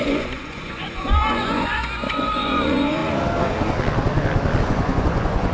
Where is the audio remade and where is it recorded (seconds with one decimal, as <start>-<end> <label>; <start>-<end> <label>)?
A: 0.0-3.0 remade; 3.0-4.6 recorded; 4.6-5.5 remade